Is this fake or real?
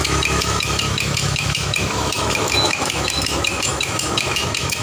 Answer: fake